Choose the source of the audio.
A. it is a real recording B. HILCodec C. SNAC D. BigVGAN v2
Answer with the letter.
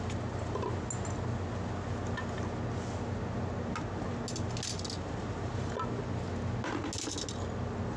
A